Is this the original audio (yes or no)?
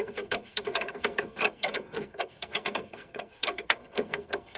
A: no